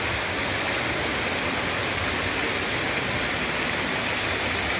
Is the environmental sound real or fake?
real